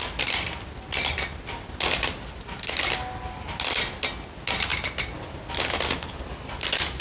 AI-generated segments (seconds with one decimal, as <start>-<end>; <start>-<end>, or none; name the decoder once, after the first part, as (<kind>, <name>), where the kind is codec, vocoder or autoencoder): none